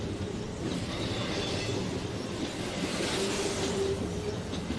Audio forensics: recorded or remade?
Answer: recorded